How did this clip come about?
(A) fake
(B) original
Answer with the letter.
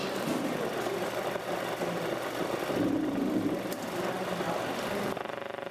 B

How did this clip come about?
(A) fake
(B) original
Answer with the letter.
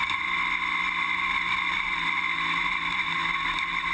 B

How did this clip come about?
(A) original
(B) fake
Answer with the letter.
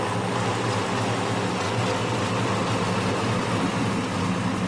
A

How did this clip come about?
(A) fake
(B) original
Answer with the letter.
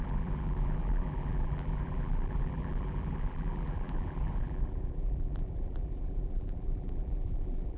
A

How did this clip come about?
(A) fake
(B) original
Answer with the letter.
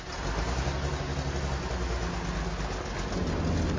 B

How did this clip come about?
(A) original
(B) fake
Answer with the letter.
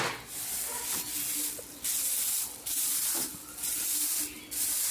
A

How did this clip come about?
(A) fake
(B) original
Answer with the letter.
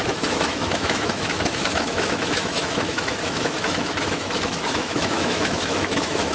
A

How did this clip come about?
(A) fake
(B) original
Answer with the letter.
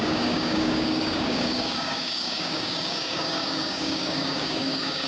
A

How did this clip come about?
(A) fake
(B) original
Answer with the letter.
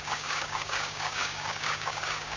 A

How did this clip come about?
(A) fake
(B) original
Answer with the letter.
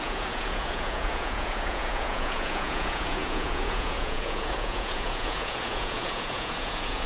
A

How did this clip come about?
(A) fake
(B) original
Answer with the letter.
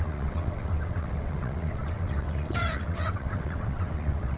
A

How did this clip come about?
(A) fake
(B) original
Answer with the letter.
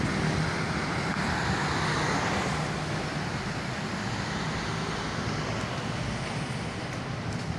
B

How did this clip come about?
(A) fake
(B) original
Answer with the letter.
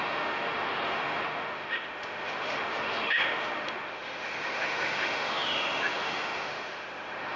A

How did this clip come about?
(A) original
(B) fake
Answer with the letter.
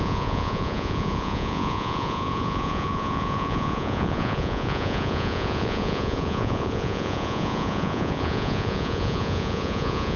B